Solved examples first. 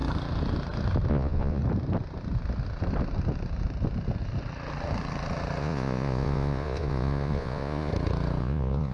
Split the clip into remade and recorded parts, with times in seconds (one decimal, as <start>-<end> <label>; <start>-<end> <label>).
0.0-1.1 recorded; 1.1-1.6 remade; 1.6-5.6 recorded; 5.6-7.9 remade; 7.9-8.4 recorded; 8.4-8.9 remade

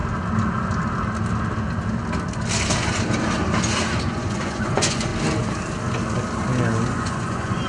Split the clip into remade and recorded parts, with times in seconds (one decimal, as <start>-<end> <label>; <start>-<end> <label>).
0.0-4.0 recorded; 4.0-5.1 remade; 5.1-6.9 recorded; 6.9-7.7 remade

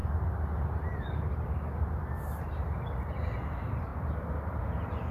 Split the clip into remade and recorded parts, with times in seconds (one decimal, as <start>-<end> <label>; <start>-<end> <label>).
0.0-5.1 recorded